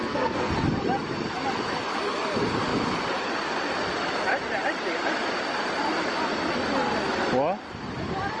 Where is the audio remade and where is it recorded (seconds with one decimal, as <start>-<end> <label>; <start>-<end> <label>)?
0.0-0.5 remade; 0.5-8.4 recorded